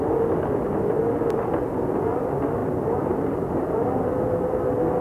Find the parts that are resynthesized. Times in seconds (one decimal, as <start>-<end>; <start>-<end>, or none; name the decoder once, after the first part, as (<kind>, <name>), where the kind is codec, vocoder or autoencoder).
none